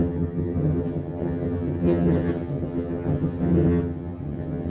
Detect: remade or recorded remade